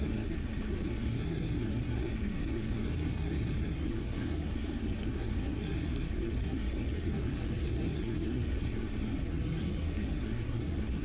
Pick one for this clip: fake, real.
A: fake